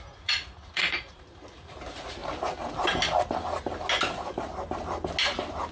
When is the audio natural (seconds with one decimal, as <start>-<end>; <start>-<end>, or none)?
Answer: 2.2-5.7